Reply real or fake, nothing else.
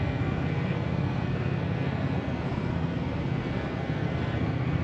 fake